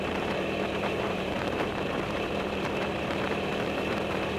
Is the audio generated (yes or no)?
yes